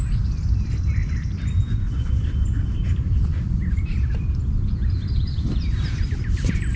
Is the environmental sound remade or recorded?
remade